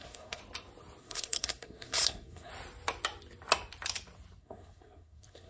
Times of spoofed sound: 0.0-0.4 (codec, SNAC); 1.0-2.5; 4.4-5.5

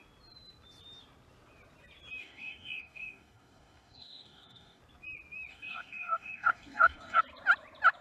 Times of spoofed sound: 2.2-4.8 (codec, DAC); 5.5-7.2